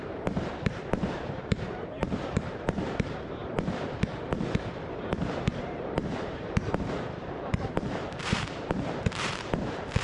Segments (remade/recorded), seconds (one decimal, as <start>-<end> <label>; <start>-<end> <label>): 0.0-10.0 remade